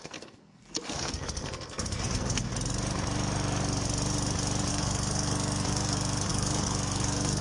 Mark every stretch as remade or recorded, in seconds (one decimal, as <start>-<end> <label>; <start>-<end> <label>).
0.0-2.5 remade; 2.5-4.7 recorded; 4.7-7.4 remade